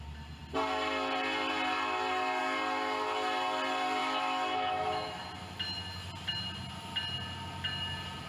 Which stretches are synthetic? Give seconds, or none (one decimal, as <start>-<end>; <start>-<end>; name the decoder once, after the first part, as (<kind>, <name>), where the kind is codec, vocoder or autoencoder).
4.0-5.2 (autoencoder, DAC-VAE)